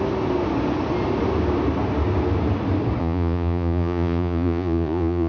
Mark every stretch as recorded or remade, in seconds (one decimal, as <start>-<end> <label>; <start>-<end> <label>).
0.0-3.0 recorded; 3.0-5.3 remade